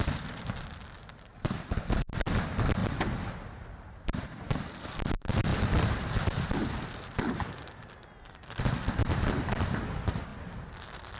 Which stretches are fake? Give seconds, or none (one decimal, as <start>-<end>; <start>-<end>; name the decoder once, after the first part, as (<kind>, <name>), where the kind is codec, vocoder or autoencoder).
0.0-2.8 (vocoder, BigVGAN v2); 4.0-11.2